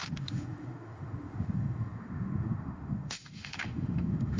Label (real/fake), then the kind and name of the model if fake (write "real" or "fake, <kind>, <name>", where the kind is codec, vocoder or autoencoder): fake, autoencoder, DAC-VAE